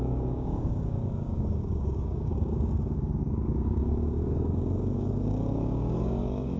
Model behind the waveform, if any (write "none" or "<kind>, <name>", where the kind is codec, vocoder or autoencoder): codec, DAC